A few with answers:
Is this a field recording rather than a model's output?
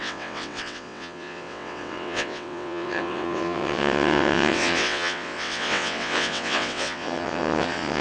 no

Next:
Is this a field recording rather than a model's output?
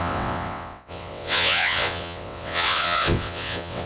no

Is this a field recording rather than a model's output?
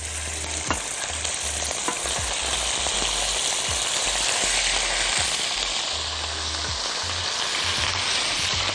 yes